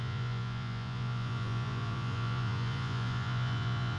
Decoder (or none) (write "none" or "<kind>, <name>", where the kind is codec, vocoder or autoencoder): vocoder, Vocos